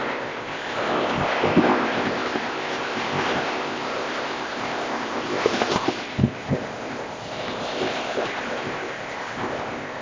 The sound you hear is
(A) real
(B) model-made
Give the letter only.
B